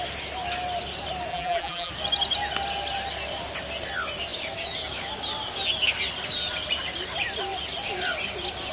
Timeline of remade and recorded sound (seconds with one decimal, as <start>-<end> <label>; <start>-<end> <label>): 0.0-1.3 recorded; 1.3-1.9 remade; 1.9-8.7 recorded